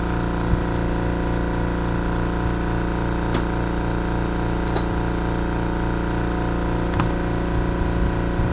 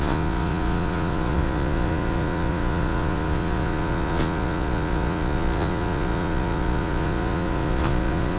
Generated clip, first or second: second